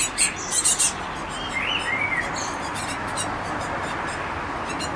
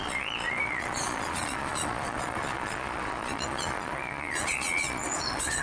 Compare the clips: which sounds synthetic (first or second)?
second